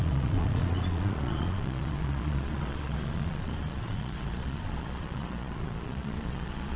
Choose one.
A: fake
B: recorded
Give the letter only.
A